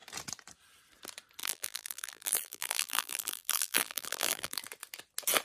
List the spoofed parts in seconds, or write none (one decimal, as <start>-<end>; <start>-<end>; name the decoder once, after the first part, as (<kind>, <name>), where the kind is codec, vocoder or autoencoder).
1.4-4.6 (vocoder, BigVGAN v2)